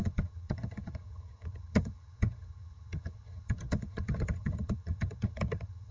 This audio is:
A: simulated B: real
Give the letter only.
A